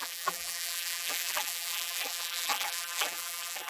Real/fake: fake